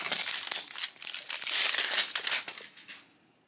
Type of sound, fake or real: real